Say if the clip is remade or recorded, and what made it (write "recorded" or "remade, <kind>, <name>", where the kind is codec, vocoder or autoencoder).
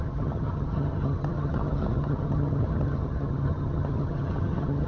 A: remade, vocoder, HiFi-GAN